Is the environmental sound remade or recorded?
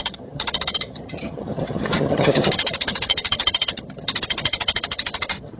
remade